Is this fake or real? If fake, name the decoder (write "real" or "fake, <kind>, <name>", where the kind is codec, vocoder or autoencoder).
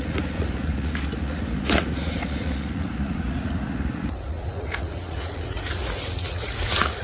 fake, vocoder, Vocos